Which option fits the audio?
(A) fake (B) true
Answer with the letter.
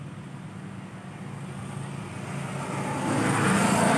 B